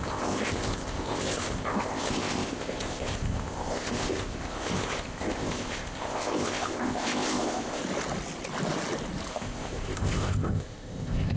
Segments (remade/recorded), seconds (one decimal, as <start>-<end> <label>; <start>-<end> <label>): 0.0-7.8 remade; 7.8-9.3 recorded; 9.3-11.4 remade